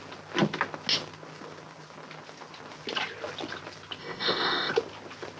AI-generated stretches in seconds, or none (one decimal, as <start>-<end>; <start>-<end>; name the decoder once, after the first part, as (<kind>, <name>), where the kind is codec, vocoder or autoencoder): 4.0-4.7 (codec, ZipCodec)